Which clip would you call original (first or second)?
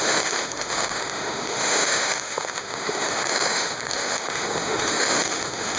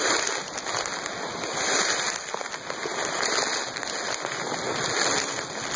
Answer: second